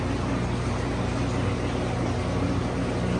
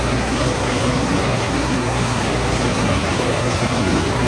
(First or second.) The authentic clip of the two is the first